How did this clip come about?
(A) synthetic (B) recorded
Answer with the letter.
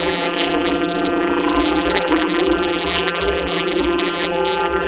A